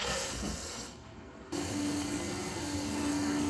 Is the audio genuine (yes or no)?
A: no